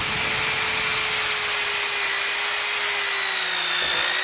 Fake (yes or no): no